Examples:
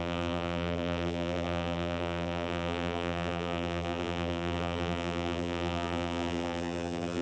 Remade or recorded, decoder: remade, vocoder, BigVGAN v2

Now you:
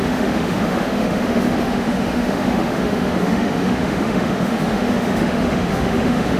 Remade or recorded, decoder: remade, autoencoder, DAC-VAE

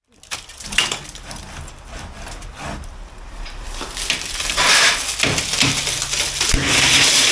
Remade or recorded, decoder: recorded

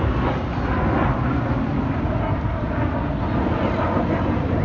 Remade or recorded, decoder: recorded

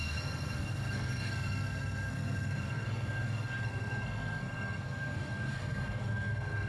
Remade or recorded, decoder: remade, codec, SNAC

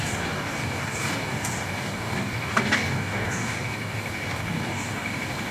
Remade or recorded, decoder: remade, codec, DAC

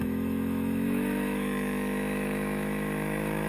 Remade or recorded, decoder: remade, autoencoder, DAC-VAE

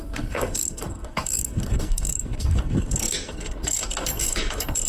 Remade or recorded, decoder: remade, codec, SNAC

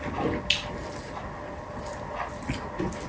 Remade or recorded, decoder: recorded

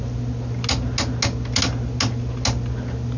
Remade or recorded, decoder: recorded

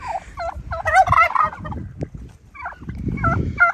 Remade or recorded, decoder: recorded